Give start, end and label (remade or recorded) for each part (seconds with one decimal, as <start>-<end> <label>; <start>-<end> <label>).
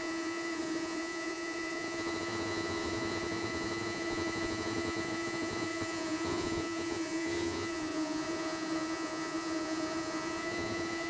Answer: 0.0-11.1 remade